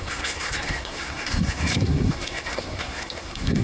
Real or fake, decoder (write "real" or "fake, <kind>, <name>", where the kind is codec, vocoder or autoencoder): fake, codec, SNAC